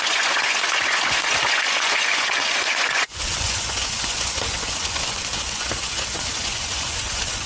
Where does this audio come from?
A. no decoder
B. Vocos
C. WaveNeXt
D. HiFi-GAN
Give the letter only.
B